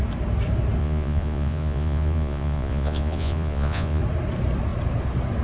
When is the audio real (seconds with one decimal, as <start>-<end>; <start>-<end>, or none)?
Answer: 0.0-0.8; 4.0-5.4

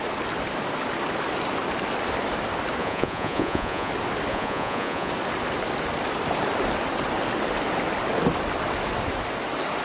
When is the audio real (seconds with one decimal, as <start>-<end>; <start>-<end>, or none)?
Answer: 0.0-2.8; 3.9-4.3; 5.1-9.8